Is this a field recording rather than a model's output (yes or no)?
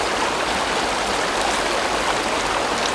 yes